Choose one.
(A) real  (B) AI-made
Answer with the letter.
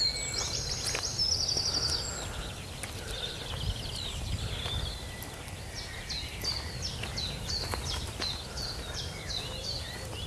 A